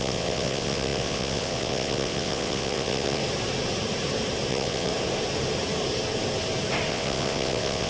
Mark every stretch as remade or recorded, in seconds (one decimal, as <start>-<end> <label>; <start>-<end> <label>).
0.0-3.2 remade; 3.2-4.5 recorded; 4.5-4.9 remade; 4.9-6.9 recorded; 6.9-7.9 remade